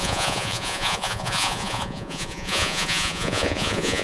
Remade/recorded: remade